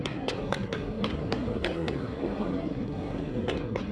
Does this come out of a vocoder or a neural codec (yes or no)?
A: yes